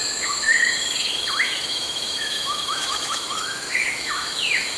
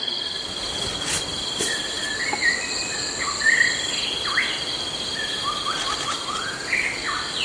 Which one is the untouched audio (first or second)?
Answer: second